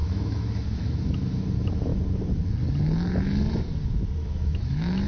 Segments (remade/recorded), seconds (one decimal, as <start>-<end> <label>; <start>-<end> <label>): 0.0-1.9 remade; 1.9-4.2 recorded; 4.2-5.1 remade